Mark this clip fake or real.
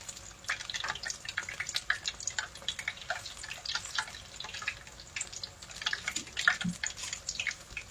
real